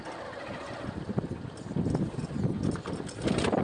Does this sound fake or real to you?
real